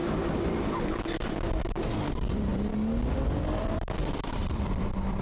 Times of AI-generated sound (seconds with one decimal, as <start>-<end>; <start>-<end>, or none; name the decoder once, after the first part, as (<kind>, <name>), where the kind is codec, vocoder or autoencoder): 0.0-2.5 (vocoder, BigVGAN v2); 3.1-5.2